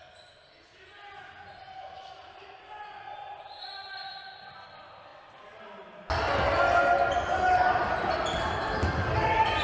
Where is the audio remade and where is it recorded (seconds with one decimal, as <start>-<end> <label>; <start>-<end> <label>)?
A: 0.0-9.6 recorded